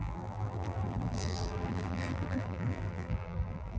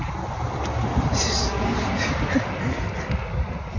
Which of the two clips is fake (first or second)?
first